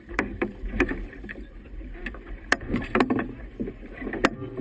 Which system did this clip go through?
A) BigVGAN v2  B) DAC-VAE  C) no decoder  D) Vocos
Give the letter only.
A